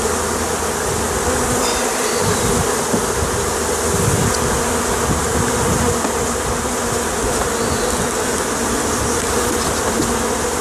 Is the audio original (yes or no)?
yes